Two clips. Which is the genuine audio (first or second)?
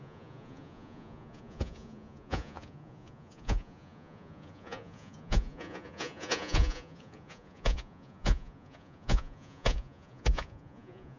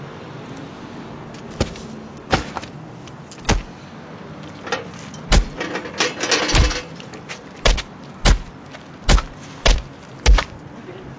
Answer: second